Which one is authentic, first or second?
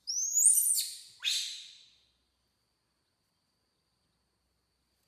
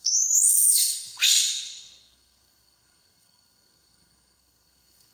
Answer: first